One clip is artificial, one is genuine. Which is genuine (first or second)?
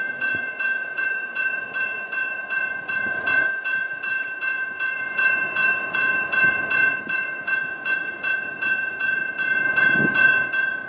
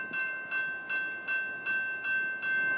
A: second